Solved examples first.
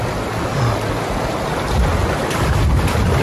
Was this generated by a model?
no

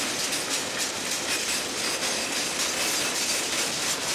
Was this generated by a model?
no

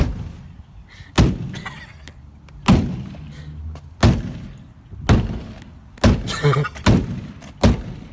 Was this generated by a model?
no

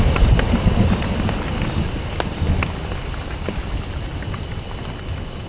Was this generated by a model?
no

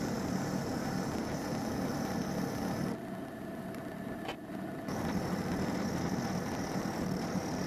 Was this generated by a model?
no